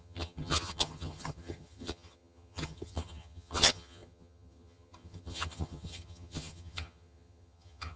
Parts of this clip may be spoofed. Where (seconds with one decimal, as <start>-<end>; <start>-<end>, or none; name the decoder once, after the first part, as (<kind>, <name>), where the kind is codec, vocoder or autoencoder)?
0.0-8.0 (vocoder, HiFi-GAN)